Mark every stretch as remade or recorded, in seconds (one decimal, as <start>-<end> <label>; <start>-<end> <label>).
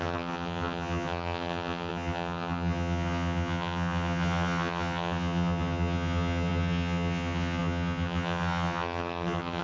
0.0-9.6 remade